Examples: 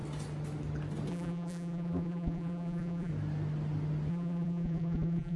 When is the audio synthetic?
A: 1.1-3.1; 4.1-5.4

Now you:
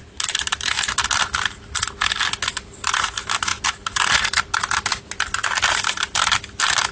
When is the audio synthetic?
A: none

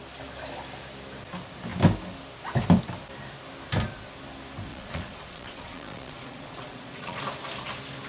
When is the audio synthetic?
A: 4.7-7.2

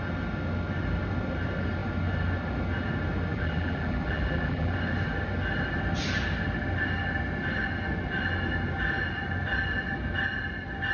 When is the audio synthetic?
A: 3.3-4.7

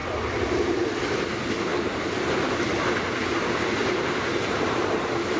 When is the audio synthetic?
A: 0.0-1.0; 1.7-2.7; 3.8-5.0